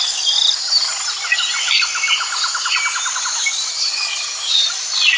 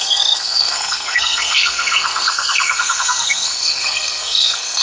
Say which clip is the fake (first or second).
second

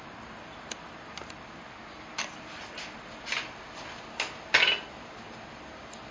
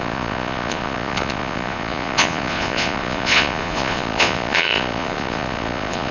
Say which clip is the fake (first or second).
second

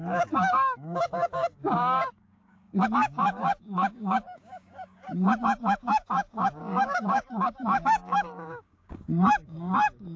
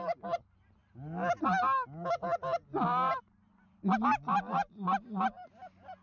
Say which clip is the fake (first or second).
first